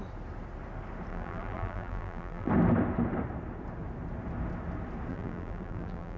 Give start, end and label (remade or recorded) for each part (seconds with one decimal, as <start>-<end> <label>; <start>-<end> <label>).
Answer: 0.0-1.1 recorded; 1.1-2.5 remade; 2.5-5.1 recorded; 5.1-6.2 remade